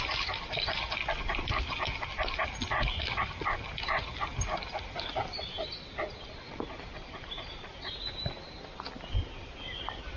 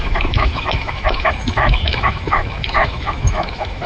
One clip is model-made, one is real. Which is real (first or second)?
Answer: first